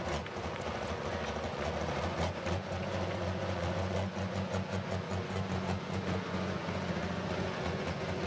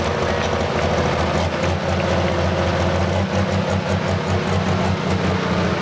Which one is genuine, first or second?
second